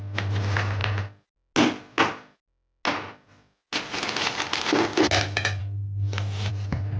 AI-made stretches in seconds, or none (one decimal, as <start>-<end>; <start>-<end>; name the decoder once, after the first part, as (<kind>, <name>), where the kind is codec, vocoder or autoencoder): 5.6-6.5 (codec, DAC)